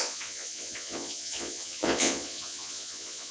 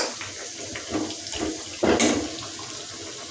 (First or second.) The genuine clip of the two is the second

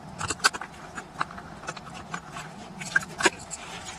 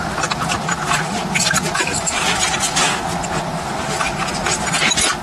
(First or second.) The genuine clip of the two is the second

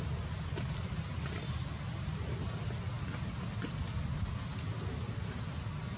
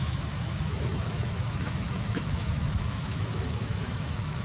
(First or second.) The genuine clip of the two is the first